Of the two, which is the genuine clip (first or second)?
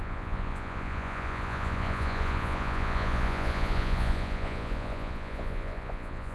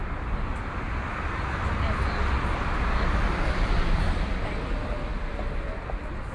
second